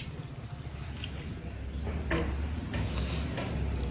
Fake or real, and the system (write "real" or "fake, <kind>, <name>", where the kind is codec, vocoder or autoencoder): real